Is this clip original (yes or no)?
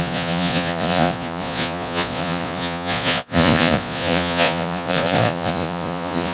no